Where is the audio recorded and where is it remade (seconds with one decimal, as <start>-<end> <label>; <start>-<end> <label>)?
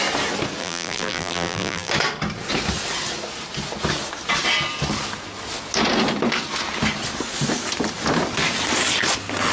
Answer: 0.0-0.6 recorded; 0.6-1.9 remade; 1.9-9.5 recorded